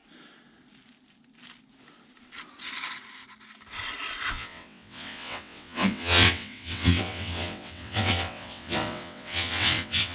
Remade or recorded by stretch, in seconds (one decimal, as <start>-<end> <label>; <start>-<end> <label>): 0.0-4.3 recorded; 4.3-10.1 remade